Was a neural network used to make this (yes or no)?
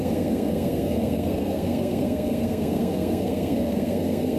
yes